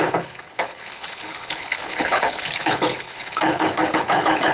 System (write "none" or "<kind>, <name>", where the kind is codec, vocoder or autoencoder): codec, HILCodec